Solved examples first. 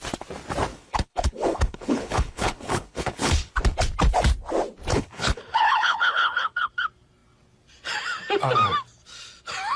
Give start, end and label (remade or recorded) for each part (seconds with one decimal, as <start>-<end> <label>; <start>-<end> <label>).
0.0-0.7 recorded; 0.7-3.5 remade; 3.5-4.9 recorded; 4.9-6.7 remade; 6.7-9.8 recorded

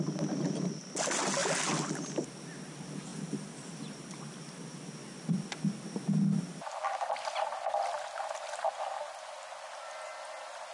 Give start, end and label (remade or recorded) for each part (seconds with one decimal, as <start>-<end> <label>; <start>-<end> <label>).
0.0-10.7 recorded

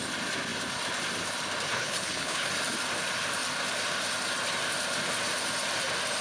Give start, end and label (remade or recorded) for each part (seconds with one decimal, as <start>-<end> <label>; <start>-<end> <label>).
0.0-1.7 recorded; 1.7-2.5 remade; 2.5-6.2 recorded

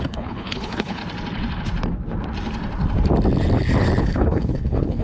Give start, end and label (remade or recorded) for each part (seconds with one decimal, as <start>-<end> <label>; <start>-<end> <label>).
0.0-1.0 remade; 1.0-4.0 recorded; 4.0-5.0 remade

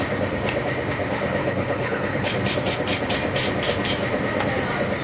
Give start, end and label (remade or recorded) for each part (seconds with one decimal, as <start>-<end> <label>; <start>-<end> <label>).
0.0-1.4 recorded; 1.4-2.3 remade; 2.3-5.0 recorded

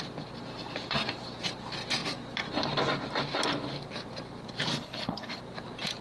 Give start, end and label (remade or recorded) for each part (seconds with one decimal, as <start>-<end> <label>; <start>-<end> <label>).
0.0-4.7 recorded; 4.7-5.4 remade; 5.4-6.0 recorded

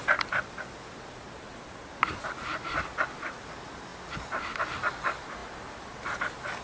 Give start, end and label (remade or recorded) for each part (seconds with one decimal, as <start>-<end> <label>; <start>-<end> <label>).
0.0-6.6 recorded